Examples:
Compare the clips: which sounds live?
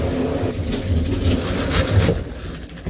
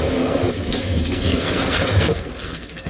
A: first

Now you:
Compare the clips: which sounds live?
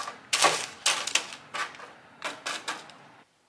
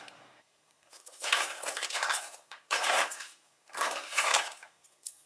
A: first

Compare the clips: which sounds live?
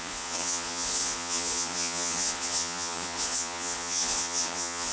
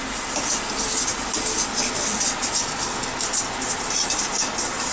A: second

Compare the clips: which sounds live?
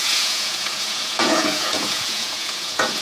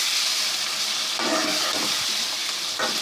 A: second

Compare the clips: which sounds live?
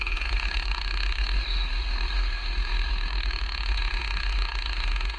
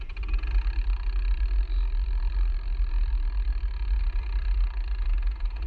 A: second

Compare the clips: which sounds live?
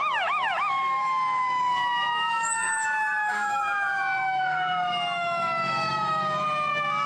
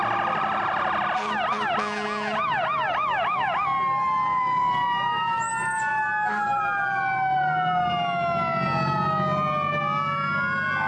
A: second